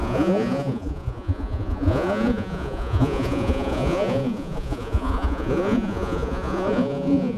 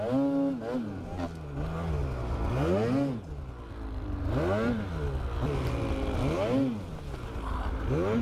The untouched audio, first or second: second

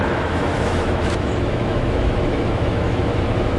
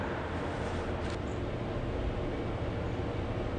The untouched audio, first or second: second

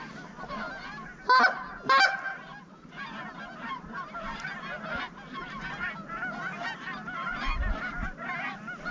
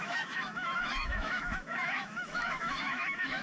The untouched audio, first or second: first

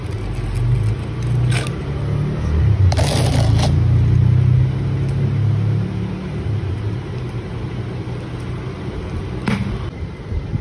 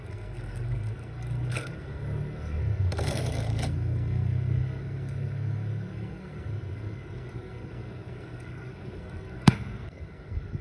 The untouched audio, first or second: first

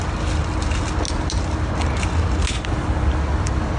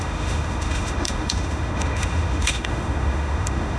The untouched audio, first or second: first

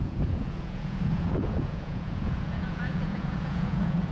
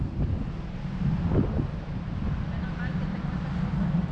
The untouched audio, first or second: second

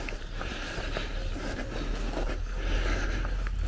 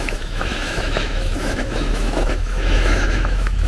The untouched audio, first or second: first